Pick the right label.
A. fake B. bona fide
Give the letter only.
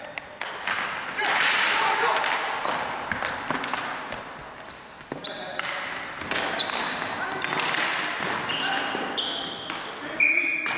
B